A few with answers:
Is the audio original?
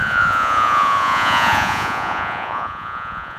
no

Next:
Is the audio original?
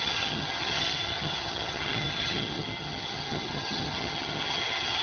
no